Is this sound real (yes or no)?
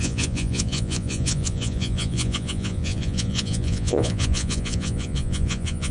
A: no